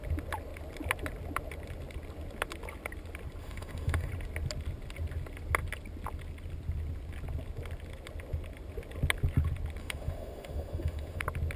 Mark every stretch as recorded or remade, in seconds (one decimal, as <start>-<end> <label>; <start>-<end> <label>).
0.0-3.4 recorded; 3.4-4.1 remade; 4.1-9.8 recorded; 9.8-11.2 remade; 11.2-11.6 recorded